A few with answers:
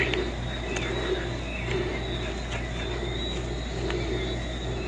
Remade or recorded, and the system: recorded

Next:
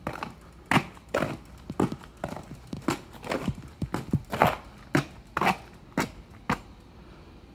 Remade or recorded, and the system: recorded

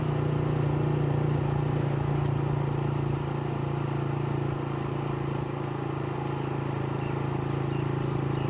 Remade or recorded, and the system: recorded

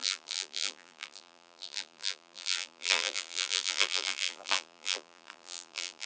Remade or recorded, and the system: remade, vocoder, BigVGAN v2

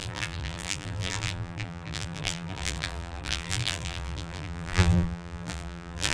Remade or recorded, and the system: remade, vocoder, BigVGAN v2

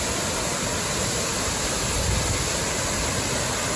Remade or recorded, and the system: recorded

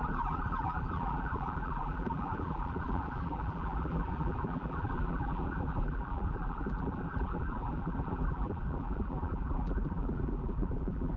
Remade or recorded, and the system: remade, vocoder, BigVGAN v2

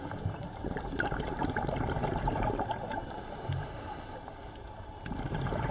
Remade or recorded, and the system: remade, vocoder, BigVGAN v2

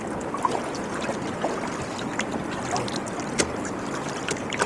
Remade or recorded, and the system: recorded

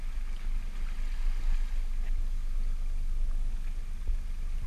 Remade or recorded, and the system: recorded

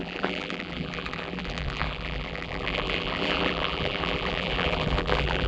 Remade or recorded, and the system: remade, vocoder, BigVGAN v2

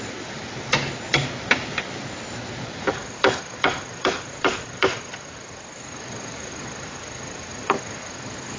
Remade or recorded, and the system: remade, vocoder, BigVGAN v2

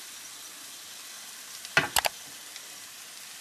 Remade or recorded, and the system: recorded